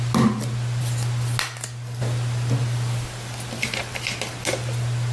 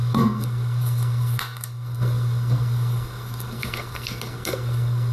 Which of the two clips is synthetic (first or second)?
second